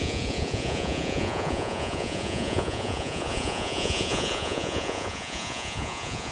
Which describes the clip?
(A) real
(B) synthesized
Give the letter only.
B